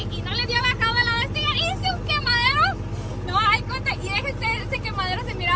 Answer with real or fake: real